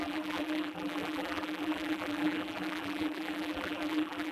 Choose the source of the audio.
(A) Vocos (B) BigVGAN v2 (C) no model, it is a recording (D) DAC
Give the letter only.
B